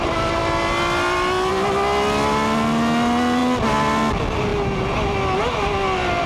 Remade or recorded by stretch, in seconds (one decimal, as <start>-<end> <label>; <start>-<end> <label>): 0.0-6.3 recorded